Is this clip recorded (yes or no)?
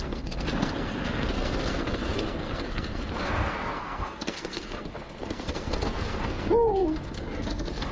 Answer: no